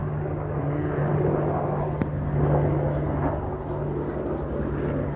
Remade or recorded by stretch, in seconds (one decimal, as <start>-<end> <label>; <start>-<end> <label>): 0.0-5.2 recorded